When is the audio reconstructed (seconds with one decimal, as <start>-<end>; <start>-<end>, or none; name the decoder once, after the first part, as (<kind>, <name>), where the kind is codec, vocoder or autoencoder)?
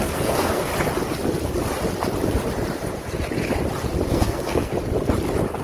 0.0-0.7 (codec, SNAC); 4.1-4.7